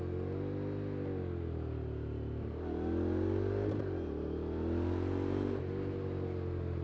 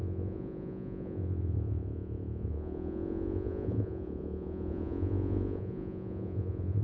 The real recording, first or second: first